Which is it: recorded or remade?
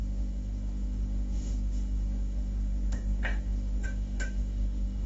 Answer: remade